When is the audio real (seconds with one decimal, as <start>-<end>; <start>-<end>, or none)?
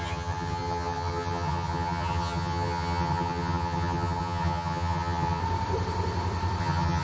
5.4-6.6